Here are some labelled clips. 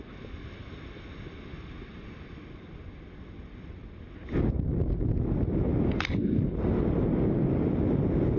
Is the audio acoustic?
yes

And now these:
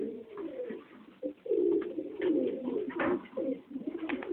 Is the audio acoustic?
no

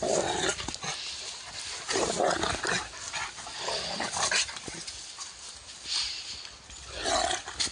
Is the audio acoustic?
yes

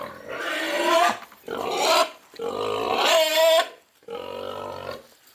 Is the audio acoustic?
yes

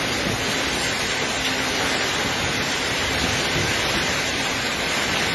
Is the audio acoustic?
no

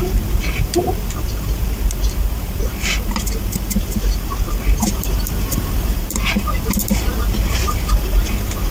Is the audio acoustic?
no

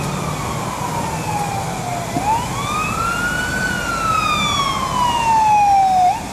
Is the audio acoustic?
yes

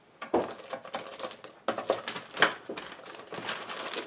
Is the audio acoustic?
yes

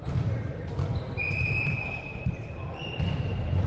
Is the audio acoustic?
no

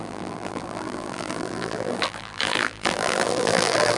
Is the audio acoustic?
no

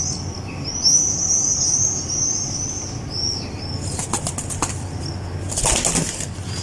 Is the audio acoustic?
yes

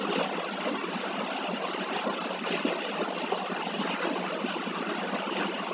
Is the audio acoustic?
yes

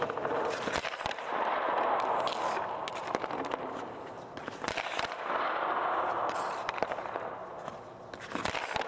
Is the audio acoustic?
yes